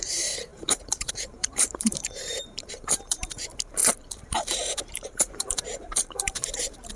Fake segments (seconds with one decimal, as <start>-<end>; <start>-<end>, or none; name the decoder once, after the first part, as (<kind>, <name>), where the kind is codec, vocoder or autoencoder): 0.0-3.8 (vocoder, BigVGAN v2); 4.7-7.0